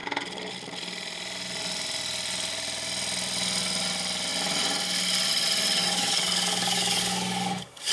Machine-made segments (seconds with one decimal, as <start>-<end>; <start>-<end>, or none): 5.8-7.9